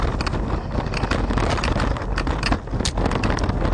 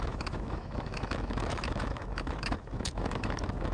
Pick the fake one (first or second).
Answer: second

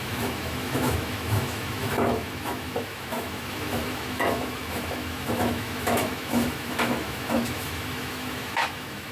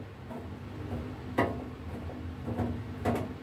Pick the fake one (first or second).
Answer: first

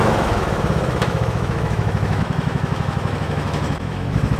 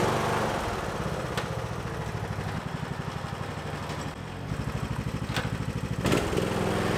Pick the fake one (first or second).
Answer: first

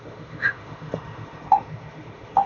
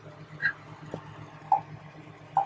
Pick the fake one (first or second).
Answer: first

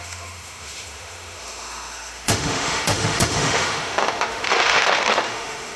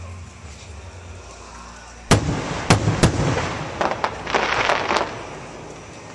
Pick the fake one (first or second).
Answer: first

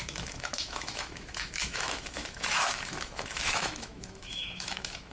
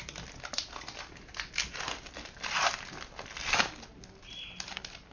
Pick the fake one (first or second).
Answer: first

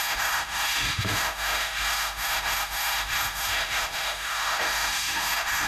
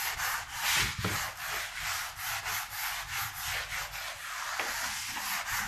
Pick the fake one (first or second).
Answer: first